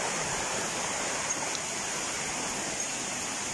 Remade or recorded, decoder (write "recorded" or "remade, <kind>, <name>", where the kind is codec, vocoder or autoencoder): remade, vocoder, BigVGAN v2